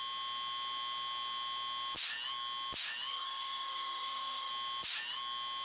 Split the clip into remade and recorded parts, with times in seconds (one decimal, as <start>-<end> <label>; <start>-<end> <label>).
0.0-3.1 recorded; 3.1-4.5 remade; 4.5-5.6 recorded